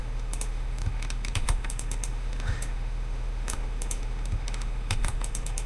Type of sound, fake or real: fake